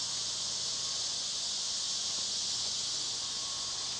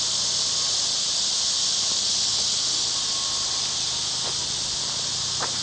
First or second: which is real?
second